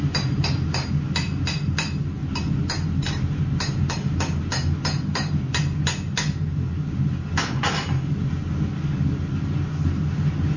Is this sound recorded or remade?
recorded